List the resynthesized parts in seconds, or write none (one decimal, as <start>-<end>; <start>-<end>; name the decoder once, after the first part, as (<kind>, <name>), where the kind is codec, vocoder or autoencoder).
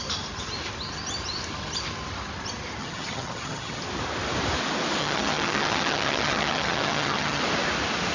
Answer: 2.8-3.8 (vocoder, HiFi-GAN); 5.0-7.4